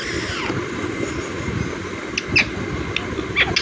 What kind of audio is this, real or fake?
real